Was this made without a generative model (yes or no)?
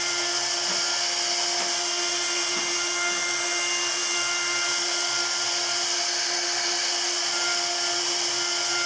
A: yes